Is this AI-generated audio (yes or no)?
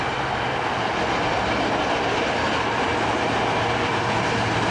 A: no